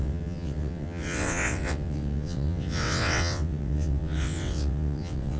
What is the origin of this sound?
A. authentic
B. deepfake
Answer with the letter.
B